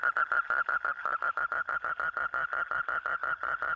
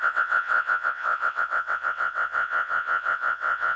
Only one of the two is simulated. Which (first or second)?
second